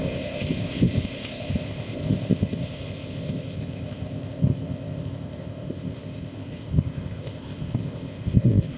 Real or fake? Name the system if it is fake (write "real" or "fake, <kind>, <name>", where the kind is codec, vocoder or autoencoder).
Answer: fake, codec, ZipCodec